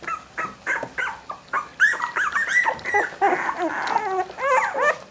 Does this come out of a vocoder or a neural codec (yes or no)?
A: no